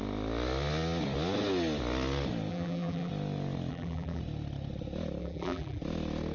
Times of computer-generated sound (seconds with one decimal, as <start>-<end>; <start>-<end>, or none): 2.5-3.1; 3.7-4.2; 5.2-5.8